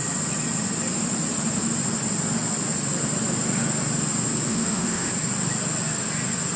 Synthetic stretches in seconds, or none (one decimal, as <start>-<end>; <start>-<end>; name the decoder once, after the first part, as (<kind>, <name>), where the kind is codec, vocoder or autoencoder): 4.5-5.1 (autoencoder, DAC-VAE)